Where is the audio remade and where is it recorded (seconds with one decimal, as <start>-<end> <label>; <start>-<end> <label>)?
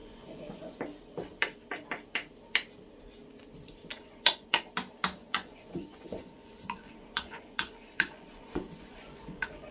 0.0-0.8 remade; 0.8-3.9 recorded; 3.9-4.6 remade; 4.6-5.2 recorded; 5.2-9.7 remade